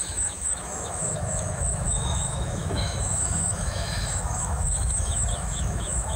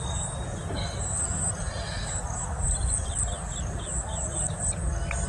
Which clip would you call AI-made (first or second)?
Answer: first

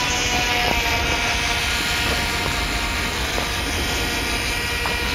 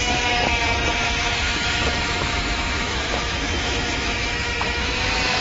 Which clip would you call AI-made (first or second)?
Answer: second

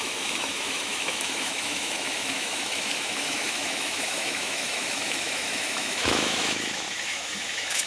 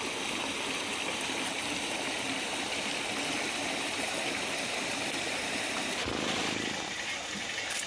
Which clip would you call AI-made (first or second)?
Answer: first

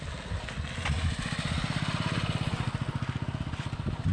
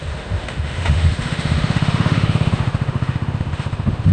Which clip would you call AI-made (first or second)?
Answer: second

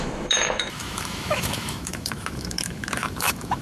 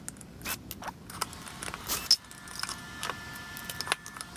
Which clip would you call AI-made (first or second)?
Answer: first